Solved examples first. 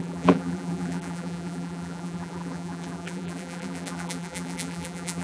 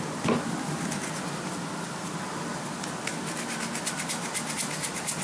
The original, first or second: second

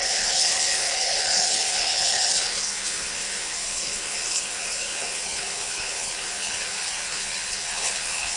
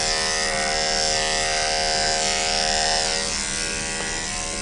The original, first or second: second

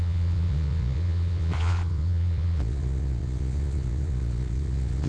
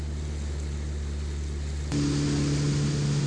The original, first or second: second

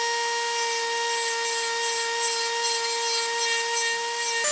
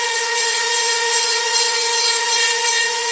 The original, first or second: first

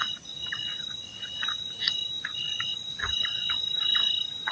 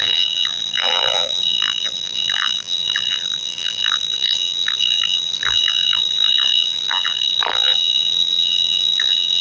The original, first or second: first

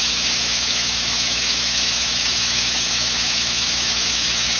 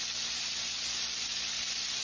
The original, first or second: second